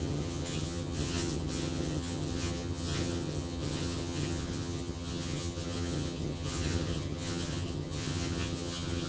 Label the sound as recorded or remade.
remade